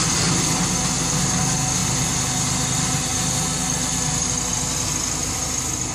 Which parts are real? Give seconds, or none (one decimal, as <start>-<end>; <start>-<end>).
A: 0.0-5.9